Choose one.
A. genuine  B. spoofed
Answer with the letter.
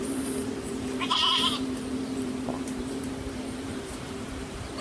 B